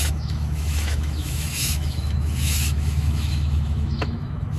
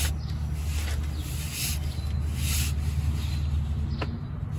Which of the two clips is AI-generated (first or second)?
first